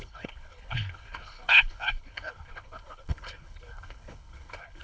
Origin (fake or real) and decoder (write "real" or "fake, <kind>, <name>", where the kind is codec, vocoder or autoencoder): fake, codec, HILCodec